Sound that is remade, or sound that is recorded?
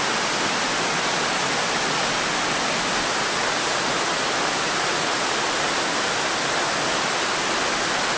recorded